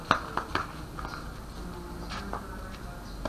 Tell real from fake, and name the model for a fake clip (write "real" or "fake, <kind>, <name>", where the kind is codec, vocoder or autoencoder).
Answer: real